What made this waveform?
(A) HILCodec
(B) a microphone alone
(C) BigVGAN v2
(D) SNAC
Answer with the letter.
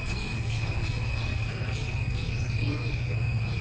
D